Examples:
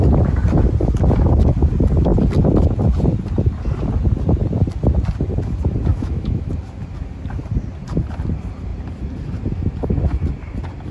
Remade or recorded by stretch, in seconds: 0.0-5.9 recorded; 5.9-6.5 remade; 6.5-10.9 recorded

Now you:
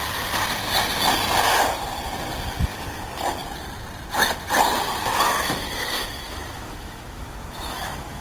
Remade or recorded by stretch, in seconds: 0.0-5.1 recorded; 5.1-8.2 remade

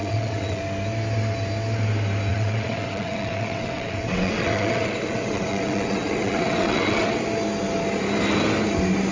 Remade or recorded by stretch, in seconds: 0.0-0.6 remade; 0.6-2.3 recorded; 2.3-7.2 remade; 7.2-9.1 recorded

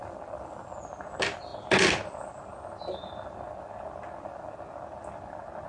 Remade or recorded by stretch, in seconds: 0.0-5.7 recorded